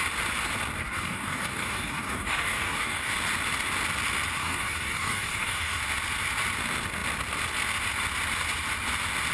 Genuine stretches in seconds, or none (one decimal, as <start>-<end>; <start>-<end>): 0.0-0.8; 3.1-4.4; 5.8-9.3

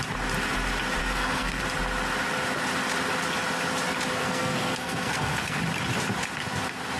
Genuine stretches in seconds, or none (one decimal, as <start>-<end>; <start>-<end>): 0.0-1.0; 1.6-4.2; 5.6-7.0

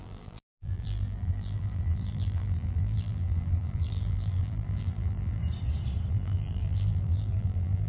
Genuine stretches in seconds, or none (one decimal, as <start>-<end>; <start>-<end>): 5.4-6.1

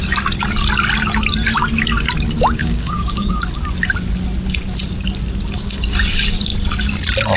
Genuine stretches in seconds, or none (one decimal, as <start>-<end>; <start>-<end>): 0.0-2.6; 3.4-7.4

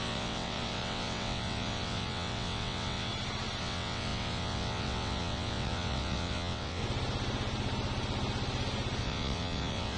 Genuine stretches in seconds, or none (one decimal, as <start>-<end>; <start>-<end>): 3.1-3.6; 6.8-9.0

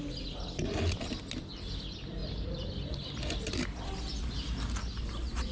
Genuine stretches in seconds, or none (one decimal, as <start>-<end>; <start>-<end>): 0.0-5.5

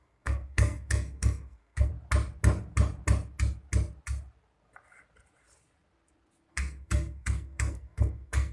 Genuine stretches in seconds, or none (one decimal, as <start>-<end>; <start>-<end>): 1.9-6.5

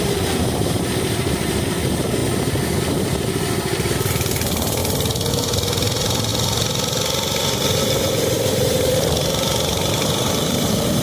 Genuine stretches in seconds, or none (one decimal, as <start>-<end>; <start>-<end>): 2.2-2.8; 4.8-5.3; 6.3-8.5